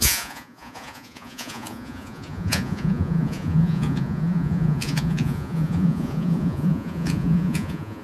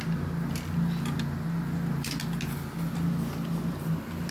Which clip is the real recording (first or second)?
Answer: second